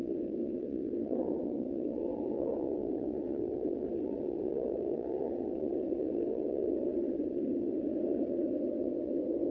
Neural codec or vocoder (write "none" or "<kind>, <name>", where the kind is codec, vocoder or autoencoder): vocoder, WaveNeXt